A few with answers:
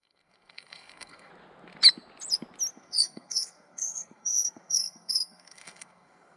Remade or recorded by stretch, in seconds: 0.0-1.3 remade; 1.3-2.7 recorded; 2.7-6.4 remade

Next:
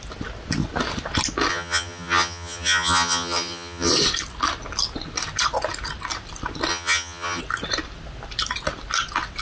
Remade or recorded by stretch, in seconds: 0.0-1.5 recorded; 1.5-3.9 remade; 3.9-6.7 recorded; 6.7-7.4 remade; 7.4-9.4 recorded

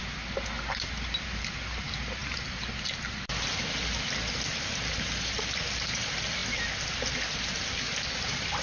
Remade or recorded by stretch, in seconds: 0.0-8.6 recorded

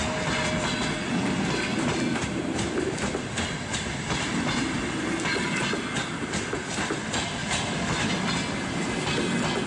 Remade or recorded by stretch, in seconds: 0.0-1.7 recorded; 1.7-4.8 remade; 4.8-7.4 recorded; 7.4-8.3 remade; 8.3-9.7 recorded

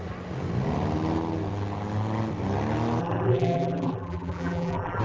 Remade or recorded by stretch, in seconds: 0.0-3.0 recorded; 3.0-5.0 remade